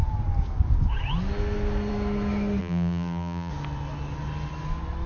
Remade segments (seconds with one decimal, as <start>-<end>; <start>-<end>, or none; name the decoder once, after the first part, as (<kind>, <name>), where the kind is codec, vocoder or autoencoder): 2.6-3.5 (vocoder, BigVGAN v2)